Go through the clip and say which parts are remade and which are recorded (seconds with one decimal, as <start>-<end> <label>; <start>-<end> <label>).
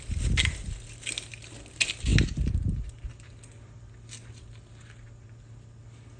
0.0-6.2 recorded